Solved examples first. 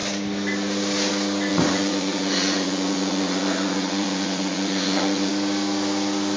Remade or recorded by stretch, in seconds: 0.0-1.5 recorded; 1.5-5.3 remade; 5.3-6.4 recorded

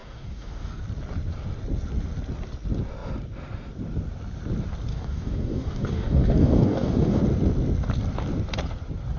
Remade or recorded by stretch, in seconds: 0.0-0.8 remade; 0.8-4.9 recorded; 4.9-7.2 remade; 7.2-9.2 recorded

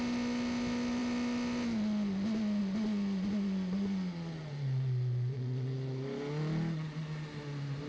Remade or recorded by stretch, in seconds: 0.0-7.9 recorded

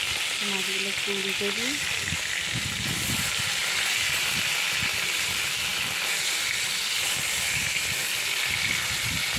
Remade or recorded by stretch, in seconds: 0.0-9.4 recorded